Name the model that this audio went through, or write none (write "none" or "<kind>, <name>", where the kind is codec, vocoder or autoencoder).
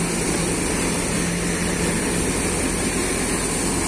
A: none